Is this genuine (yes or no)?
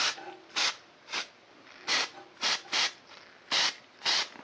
yes